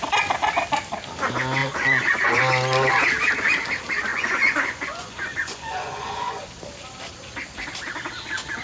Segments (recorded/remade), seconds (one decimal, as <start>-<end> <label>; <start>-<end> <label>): 0.0-1.6 recorded; 1.6-2.4 remade; 2.4-4.1 recorded; 4.1-6.4 remade; 6.4-8.6 recorded